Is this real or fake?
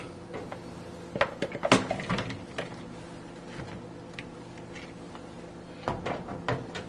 real